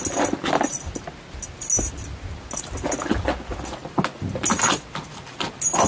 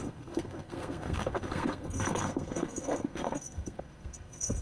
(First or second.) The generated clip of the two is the second